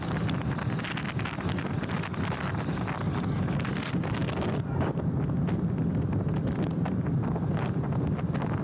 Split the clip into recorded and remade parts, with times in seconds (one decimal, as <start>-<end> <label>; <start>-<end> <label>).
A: 0.0-4.2 recorded; 4.2-5.2 remade; 5.2-8.6 recorded